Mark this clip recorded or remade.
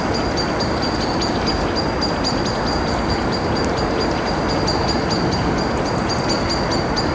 recorded